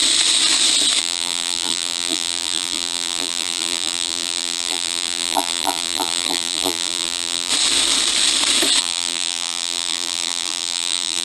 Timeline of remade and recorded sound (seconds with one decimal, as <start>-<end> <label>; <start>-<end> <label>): 0.0-1.0 recorded; 1.0-7.5 remade; 7.5-8.8 recorded; 8.8-11.2 remade